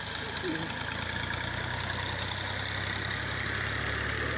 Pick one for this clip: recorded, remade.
recorded